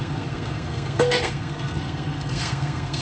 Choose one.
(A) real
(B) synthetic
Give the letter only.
B